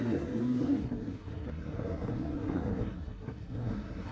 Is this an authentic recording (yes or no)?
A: no